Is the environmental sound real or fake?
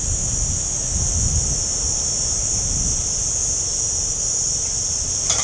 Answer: real